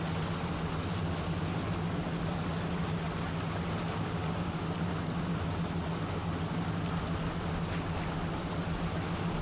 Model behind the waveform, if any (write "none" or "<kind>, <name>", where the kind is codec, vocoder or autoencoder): none